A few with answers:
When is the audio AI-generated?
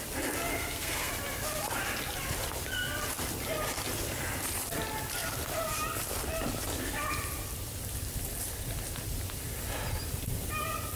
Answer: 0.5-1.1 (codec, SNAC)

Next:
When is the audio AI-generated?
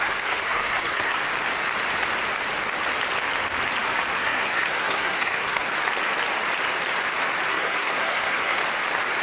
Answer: 0.0-1.2 (codec, SNAC); 4.1-5.7; 7.5-8.6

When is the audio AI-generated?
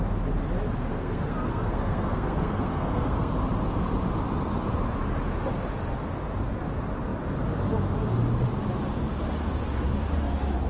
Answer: 0.9-3.3 (codec, SNAC)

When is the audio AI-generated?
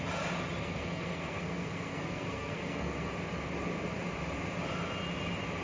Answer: 0.6-3.1 (codec, SNAC)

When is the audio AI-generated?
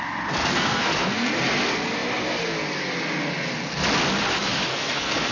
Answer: 0.4-1.3 (codec, SNAC); 4.7-5.3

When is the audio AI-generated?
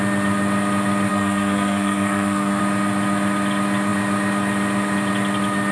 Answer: 1.1-2.6 (codec, SNAC)